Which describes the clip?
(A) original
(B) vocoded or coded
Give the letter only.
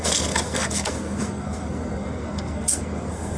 B